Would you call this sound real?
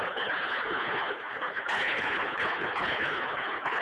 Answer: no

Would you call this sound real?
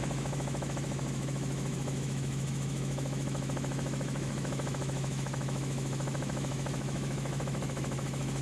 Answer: no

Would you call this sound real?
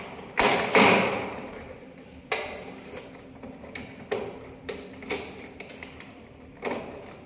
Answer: yes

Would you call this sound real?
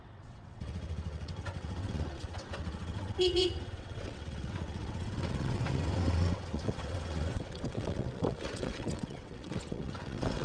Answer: no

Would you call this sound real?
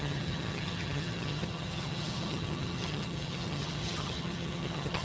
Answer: no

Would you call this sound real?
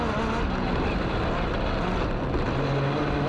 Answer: yes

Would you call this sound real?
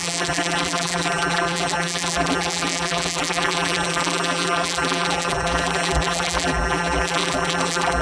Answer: no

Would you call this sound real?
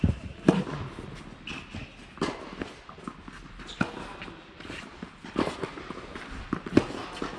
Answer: yes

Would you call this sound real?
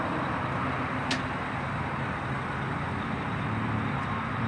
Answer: yes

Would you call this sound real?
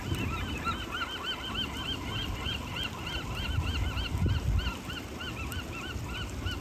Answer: yes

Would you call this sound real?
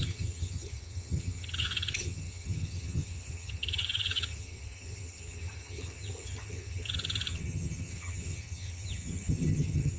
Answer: no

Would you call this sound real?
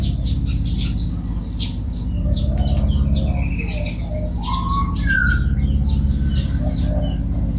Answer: yes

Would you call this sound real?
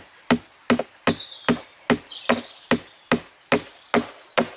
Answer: yes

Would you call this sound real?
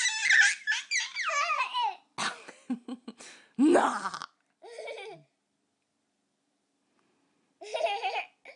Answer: yes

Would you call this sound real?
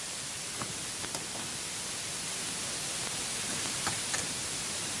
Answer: yes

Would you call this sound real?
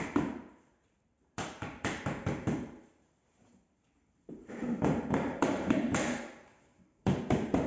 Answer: no